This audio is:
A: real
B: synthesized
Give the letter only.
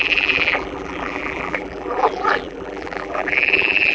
B